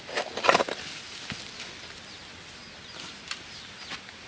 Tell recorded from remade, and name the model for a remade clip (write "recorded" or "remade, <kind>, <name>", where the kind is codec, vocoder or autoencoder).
recorded